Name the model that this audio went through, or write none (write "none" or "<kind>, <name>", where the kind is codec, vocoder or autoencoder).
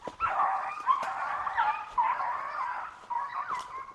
none